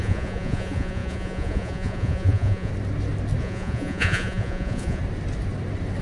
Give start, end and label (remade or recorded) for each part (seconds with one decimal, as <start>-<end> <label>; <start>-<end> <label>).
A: 0.0-2.7 remade; 2.7-3.4 recorded; 3.4-5.0 remade; 5.0-6.0 recorded